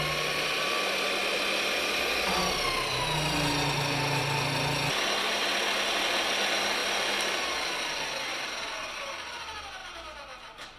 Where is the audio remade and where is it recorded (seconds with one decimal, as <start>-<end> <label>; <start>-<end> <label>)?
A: 0.0-10.8 recorded